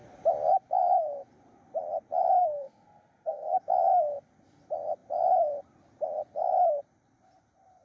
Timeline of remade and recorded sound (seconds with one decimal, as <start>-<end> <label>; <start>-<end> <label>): 0.0-2.4 recorded; 2.4-3.6 remade; 3.6-7.8 recorded